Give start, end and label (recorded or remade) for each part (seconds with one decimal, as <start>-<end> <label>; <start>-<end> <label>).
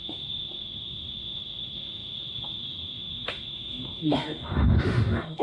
0.0-5.4 remade